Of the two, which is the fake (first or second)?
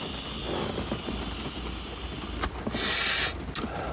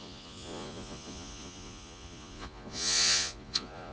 second